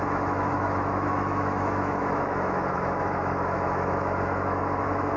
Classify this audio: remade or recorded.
remade